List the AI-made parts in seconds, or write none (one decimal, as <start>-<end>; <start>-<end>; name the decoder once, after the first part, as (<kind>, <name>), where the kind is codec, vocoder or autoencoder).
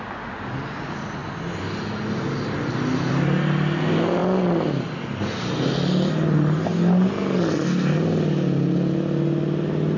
none